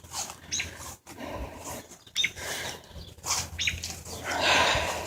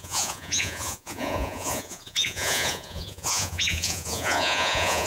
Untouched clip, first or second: first